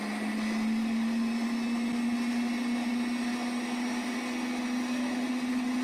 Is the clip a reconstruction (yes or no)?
no